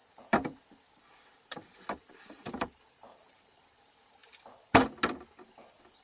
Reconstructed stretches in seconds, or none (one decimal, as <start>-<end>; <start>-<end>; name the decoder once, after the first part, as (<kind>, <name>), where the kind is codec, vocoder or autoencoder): 0.0-4.2 (vocoder, BigVGAN v2)